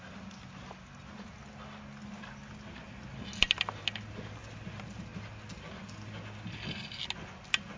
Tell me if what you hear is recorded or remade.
recorded